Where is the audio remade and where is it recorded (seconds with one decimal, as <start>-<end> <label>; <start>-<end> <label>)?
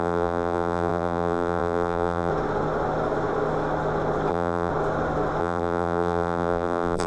0.0-2.3 remade; 2.3-4.3 recorded; 4.3-4.7 remade; 4.7-5.4 recorded; 5.4-7.1 remade